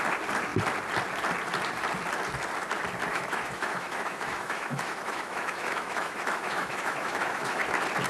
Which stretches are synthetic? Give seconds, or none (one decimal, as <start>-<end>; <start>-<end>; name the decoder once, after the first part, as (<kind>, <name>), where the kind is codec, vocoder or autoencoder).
3.1-7.6 (autoencoder, DAC-VAE)